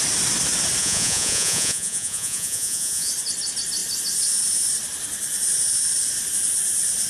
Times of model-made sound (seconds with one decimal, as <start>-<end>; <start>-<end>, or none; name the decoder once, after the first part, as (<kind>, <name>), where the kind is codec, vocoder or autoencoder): 0.8-3.1 (vocoder, Vocos)